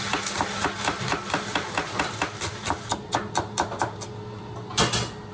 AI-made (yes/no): no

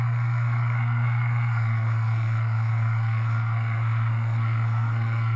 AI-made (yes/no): yes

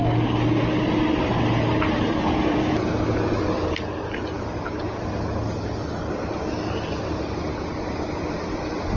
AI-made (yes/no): no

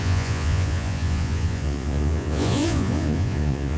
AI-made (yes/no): yes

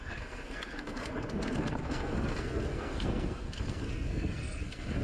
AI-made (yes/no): yes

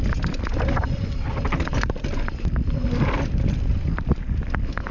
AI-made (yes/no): no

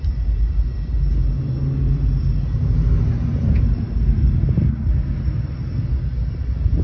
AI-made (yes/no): no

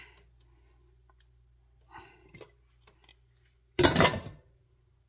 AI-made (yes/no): no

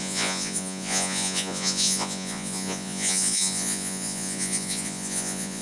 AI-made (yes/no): yes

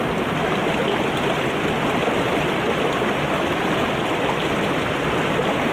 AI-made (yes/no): no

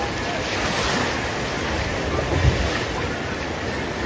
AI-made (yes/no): no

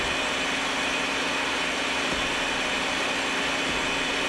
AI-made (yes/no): no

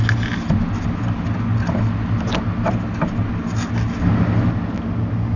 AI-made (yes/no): no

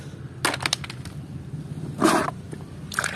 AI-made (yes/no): no